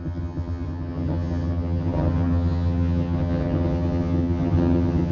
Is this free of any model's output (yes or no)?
no